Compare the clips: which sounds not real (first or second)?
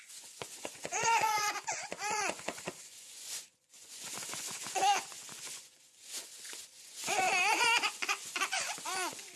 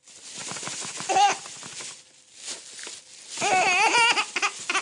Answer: first